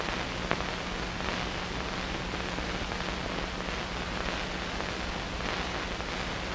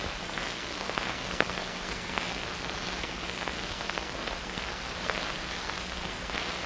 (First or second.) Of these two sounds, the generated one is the second